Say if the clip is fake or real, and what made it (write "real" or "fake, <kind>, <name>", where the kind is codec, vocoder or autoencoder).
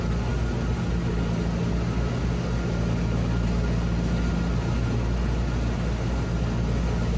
real